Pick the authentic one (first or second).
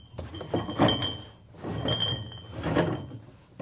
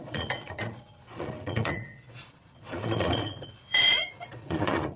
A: first